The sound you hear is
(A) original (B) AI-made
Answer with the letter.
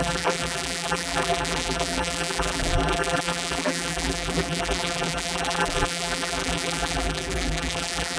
B